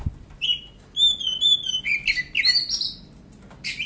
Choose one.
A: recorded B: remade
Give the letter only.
A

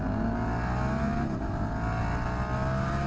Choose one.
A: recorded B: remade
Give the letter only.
A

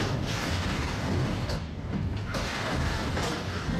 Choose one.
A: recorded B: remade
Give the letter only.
B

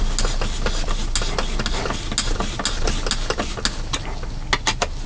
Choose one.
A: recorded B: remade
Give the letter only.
A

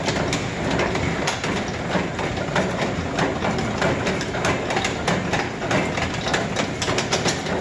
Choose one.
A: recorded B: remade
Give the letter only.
A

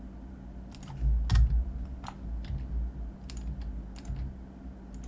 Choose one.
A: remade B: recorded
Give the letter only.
B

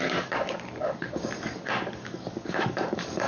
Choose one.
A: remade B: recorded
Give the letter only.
A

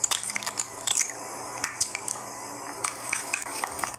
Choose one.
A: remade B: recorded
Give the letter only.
A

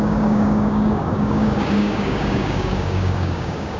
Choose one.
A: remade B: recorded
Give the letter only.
A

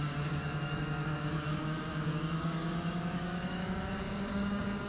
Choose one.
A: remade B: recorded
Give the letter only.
A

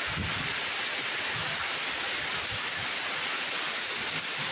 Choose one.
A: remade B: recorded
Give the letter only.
B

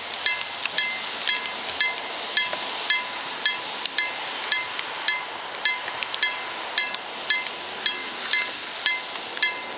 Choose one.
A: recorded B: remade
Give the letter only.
A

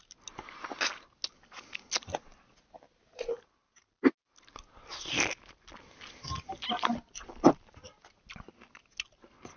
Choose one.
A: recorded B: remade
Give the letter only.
A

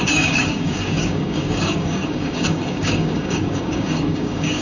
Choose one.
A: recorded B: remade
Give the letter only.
B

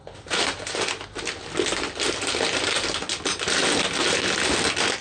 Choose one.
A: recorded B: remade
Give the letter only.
A